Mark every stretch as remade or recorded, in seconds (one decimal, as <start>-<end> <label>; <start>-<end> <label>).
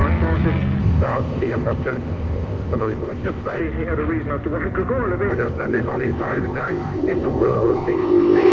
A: 0.0-0.8 recorded; 0.8-3.6 remade; 3.6-5.3 recorded; 5.3-8.5 remade